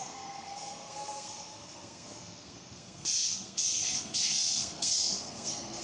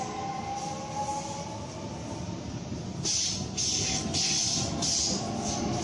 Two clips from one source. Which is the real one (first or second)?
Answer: second